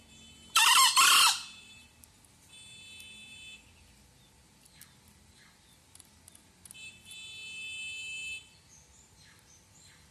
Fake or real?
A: real